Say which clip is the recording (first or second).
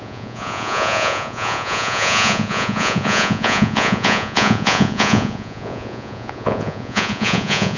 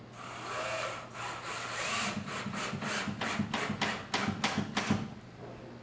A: second